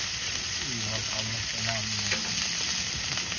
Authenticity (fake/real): real